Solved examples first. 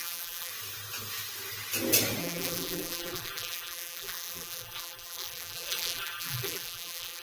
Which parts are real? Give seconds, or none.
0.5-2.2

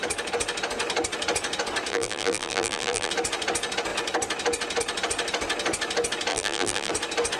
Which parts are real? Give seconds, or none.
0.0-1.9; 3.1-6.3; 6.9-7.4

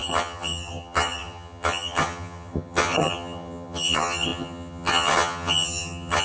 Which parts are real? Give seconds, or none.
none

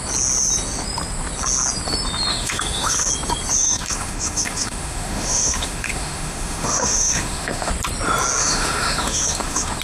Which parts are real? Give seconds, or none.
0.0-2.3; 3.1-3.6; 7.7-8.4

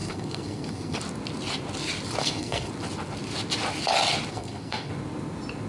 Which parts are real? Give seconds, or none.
1.0-2.2; 2.7-4.3; 4.9-5.7